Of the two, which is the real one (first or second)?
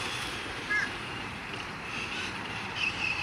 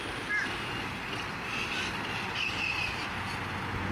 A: second